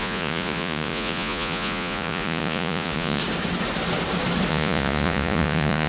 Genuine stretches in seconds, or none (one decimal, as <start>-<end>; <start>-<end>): 3.2-4.5